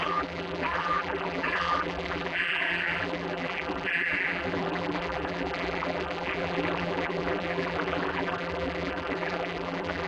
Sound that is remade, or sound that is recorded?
remade